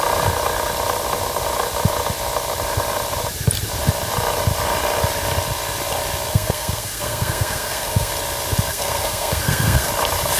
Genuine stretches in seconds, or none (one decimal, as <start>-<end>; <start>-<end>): 0.0-6.3; 8.1-8.7; 9.9-10.4